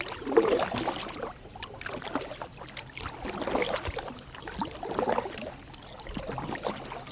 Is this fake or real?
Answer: real